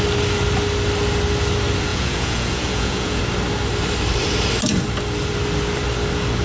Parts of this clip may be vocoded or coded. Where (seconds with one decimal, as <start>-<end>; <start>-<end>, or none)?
1.9-3.2